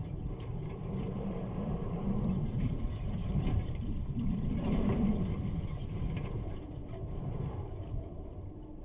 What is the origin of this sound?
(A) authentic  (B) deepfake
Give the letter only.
B